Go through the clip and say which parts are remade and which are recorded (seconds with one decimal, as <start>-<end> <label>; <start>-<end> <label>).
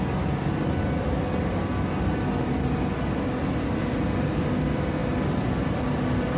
0.0-6.4 recorded